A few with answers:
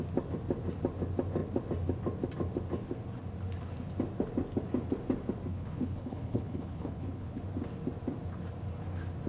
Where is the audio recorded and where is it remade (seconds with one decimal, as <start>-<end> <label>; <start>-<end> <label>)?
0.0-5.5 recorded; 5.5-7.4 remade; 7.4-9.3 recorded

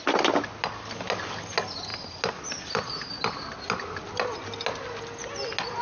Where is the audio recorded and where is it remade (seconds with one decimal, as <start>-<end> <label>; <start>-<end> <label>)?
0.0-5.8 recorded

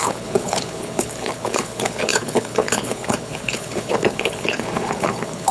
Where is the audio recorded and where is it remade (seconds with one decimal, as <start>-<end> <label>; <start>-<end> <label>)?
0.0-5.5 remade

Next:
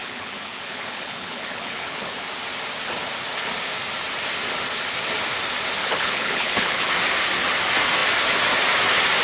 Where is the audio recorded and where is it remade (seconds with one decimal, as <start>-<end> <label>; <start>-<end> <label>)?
0.0-2.2 remade; 2.2-5.8 recorded; 5.8-6.9 remade; 6.9-9.2 recorded

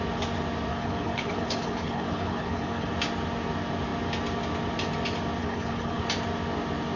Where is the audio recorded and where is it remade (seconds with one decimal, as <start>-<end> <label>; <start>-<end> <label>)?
0.0-0.7 recorded; 0.7-2.9 remade; 2.9-5.4 recorded; 5.4-6.0 remade; 6.0-7.0 recorded

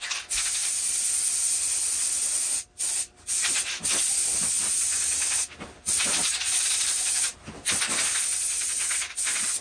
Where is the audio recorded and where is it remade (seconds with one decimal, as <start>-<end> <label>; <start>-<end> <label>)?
0.0-9.6 recorded